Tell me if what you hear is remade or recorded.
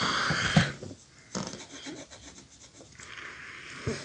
recorded